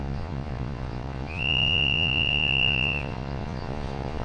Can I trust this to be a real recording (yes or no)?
no